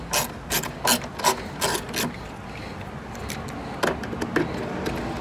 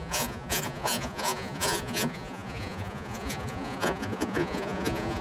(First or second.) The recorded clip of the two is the first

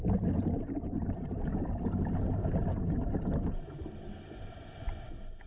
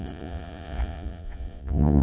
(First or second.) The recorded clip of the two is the first